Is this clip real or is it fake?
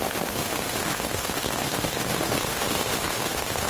fake